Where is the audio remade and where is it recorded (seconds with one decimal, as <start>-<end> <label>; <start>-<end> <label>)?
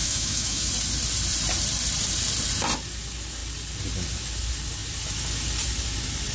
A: 0.0-0.7 remade; 0.7-6.3 recorded